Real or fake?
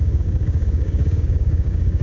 fake